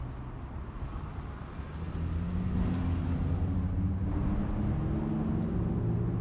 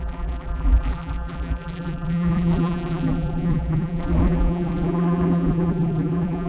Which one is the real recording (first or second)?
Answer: first